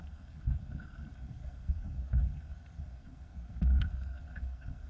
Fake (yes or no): yes